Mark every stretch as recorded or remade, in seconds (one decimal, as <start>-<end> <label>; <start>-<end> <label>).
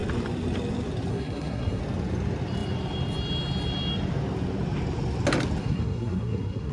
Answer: 0.0-1.1 recorded; 1.1-1.8 remade; 1.8-5.6 recorded; 5.6-6.7 remade